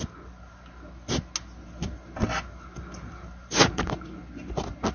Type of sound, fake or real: real